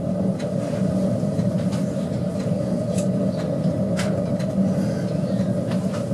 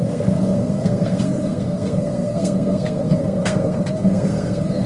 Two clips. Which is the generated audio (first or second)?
second